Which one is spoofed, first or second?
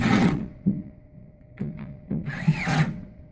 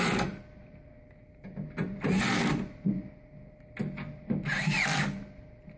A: first